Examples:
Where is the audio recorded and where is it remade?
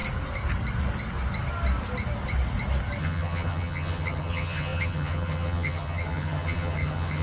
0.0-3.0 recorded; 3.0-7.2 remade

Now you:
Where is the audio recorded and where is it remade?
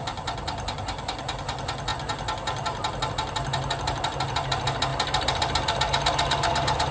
0.0-6.9 recorded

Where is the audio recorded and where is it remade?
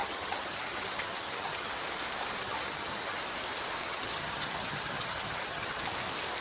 0.0-1.7 remade; 1.7-2.4 recorded; 2.4-3.2 remade; 3.2-3.8 recorded; 3.8-5.8 remade; 5.8-6.4 recorded